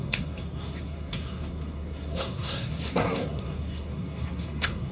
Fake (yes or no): yes